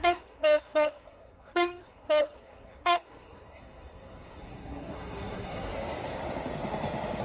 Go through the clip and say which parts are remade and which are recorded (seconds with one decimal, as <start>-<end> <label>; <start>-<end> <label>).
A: 0.0-5.7 remade; 5.7-7.2 recorded